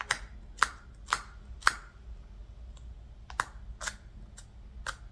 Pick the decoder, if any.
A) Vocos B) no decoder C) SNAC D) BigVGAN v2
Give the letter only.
B